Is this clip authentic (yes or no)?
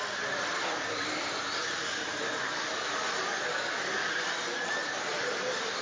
yes